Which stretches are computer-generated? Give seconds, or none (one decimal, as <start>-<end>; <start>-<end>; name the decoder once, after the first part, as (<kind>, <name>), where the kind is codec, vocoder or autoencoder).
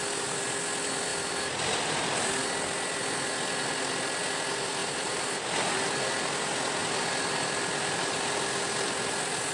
4.8-5.3 (vocoder, BigVGAN v2)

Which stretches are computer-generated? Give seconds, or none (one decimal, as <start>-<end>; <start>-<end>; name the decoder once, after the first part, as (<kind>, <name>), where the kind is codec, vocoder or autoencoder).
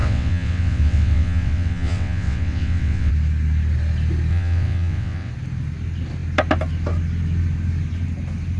0.0-3.1 (vocoder, WaveNeXt); 4.3-5.3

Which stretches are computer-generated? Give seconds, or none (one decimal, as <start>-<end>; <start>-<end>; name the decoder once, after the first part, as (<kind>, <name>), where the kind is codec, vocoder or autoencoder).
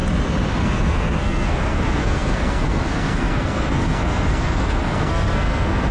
0.5-5.9 (codec, SNAC)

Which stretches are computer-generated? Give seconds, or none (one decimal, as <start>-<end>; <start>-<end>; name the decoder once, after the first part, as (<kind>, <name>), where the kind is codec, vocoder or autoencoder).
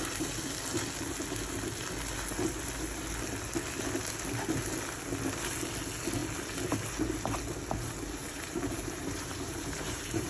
8.2-10.3 (vocoder, BigVGAN v2)